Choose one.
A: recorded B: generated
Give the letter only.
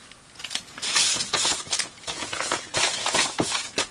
B